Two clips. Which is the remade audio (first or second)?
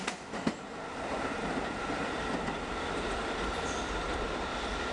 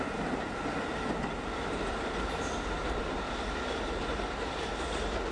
first